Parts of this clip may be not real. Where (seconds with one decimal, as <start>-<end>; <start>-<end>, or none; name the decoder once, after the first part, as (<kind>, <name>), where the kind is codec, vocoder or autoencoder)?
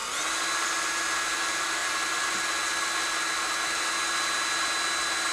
none